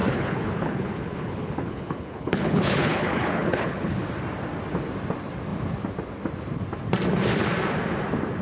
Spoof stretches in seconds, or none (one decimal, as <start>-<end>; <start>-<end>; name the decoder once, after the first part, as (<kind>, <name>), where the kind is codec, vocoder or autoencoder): 0.0-4.1 (codec, HILCodec)